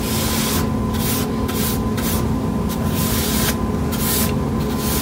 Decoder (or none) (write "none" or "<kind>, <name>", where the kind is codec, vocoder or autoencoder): none